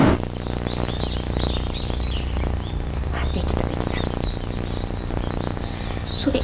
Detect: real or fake real